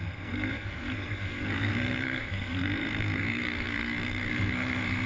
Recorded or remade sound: remade